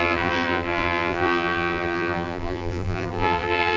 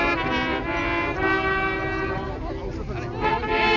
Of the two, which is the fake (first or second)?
first